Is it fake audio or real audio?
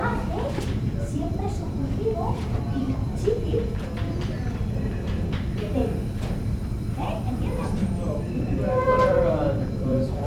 fake